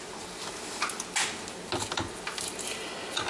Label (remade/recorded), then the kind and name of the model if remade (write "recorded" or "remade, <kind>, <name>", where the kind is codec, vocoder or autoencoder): recorded